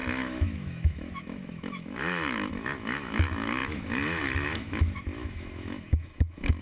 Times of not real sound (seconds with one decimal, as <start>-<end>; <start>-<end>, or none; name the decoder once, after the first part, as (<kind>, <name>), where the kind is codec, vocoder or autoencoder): 0.0-6.6 (autoencoder, DAC-VAE)

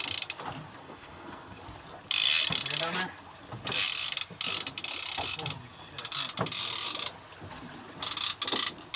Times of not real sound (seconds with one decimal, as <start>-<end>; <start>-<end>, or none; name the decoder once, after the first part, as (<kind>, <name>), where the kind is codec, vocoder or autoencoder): 0.8-1.6 (codec, SNAC)

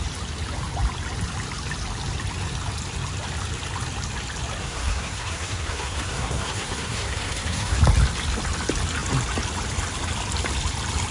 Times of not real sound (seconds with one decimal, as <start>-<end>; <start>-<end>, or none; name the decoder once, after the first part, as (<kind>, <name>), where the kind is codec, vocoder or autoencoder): 4.6-7.8 (codec, SNAC)

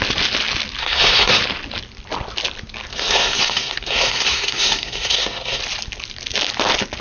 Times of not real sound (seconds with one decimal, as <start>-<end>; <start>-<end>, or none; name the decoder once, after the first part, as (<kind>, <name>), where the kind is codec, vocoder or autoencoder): 0.8-1.4 (codec, SNAC); 2.9-5.6

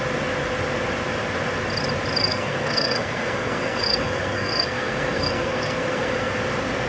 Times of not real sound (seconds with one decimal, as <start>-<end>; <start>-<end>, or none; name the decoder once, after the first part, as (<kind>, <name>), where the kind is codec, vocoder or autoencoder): 2.2-6.3 (codec, SNAC)

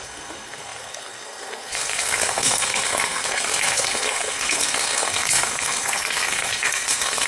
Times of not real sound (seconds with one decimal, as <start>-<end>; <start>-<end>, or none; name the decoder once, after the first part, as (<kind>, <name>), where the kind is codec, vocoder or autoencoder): 0.0-7.3 (codec, SNAC)